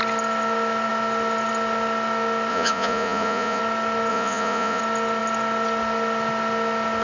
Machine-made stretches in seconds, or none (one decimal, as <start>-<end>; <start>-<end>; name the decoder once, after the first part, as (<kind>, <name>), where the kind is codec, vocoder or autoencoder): 2.5-3.6 (vocoder, Vocos); 4.1-4.8